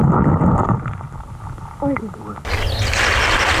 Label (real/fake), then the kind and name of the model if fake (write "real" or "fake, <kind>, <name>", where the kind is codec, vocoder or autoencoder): real